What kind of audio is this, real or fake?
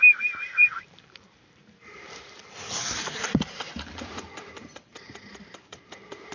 fake